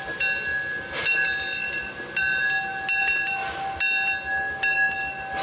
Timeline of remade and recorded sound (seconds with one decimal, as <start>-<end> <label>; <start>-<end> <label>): 0.0-5.4 recorded